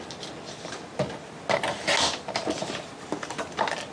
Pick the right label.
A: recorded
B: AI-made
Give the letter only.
A